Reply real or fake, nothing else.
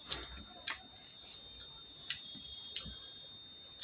real